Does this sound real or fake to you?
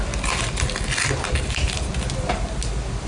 real